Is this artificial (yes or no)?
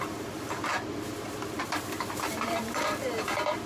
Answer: yes